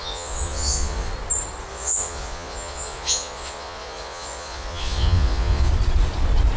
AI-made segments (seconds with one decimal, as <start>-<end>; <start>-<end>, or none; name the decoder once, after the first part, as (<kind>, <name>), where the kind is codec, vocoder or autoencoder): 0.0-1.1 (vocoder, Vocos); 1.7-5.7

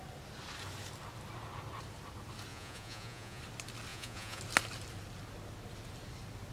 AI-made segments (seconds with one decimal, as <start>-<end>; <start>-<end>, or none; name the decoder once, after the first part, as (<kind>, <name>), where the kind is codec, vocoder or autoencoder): 2.5-3.4 (vocoder, Vocos); 3.9-4.4

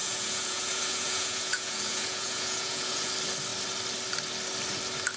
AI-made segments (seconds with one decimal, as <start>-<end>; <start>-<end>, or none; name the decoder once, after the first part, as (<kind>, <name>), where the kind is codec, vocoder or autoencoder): 0.0-3.1 (vocoder, Vocos)

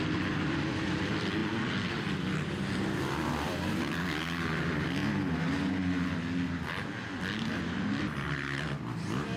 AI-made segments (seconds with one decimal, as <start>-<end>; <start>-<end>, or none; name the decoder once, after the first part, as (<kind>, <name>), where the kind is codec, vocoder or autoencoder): 0.0-5.0 (vocoder, BigVGAN v2); 7.5-9.4

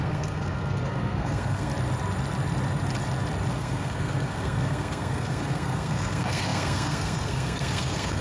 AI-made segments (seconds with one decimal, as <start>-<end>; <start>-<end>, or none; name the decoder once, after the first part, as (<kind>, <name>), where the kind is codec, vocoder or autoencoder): 0.0-1.7 (codec, SNAC); 3.5-8.2